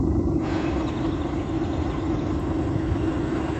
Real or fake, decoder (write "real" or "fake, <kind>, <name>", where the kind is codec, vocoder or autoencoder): real